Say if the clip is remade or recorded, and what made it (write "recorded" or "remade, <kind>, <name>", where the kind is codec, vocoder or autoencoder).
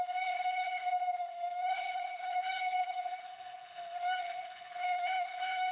remade, codec, HILCodec